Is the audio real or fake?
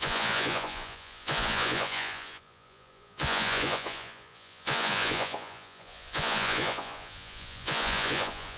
fake